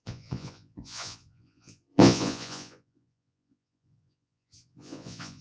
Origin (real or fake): fake